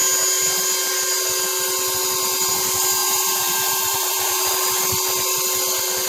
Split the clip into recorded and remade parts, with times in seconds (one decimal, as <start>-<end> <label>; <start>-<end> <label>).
0.0-3.0 recorded; 3.0-4.5 remade; 4.5-6.1 recorded